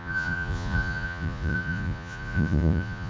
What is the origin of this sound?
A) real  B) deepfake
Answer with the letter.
B